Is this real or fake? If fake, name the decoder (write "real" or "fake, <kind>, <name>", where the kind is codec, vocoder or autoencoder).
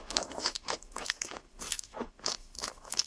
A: fake, autoencoder, DAC-VAE